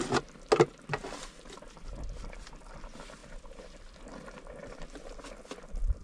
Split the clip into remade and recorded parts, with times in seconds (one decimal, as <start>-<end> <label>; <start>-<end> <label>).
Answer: 0.0-6.0 recorded